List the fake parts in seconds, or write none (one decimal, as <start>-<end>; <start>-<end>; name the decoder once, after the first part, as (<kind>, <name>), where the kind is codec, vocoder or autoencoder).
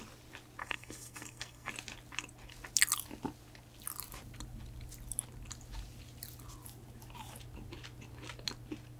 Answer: 0.6-1.7 (codec, SNAC)